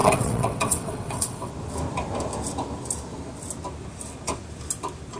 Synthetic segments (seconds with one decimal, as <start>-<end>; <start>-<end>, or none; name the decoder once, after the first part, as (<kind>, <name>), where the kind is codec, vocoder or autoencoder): 0.0-1.5 (vocoder, WaveNeXt)